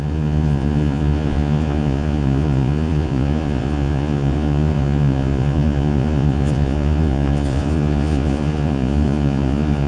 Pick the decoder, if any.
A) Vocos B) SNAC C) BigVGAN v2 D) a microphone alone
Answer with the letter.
A